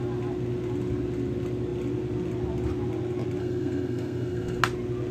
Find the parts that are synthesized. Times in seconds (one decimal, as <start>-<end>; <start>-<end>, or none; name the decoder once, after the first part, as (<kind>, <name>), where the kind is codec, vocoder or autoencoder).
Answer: 3.4-4.6 (codec, SNAC)